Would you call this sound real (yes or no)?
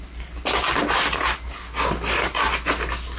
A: yes